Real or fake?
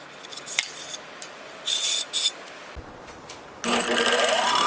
real